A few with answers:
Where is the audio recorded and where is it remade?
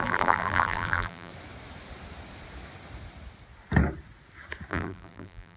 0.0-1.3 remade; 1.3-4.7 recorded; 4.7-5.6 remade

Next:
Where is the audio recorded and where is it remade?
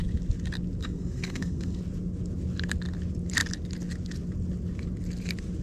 0.0-0.8 recorded; 0.8-1.8 remade; 1.8-5.6 recorded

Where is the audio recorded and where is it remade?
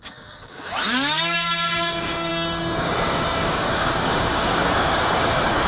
0.0-5.7 remade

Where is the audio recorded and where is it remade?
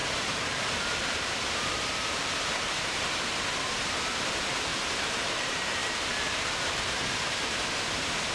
0.0-1.0 recorded; 1.0-3.3 remade; 3.3-4.7 recorded; 4.7-7.0 remade; 7.0-8.3 recorded